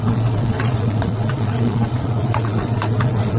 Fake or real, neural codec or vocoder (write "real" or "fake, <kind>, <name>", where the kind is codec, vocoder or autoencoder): fake, vocoder, Vocos